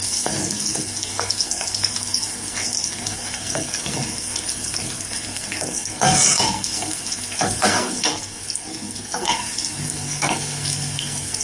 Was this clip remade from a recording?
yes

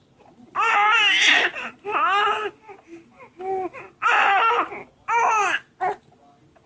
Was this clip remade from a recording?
no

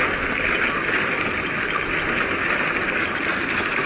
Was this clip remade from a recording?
no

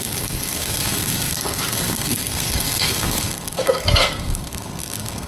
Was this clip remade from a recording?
yes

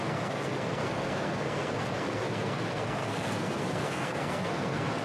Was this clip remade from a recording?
yes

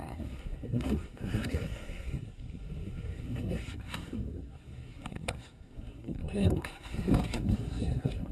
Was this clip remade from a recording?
yes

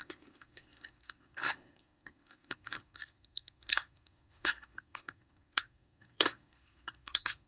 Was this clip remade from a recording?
yes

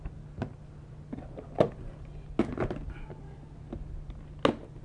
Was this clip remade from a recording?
no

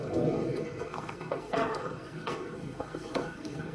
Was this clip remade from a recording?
yes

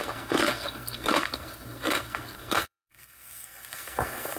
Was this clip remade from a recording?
yes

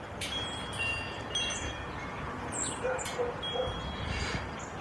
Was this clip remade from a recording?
no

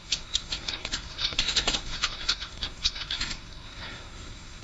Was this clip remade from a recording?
yes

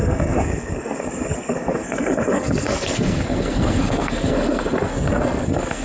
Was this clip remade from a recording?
yes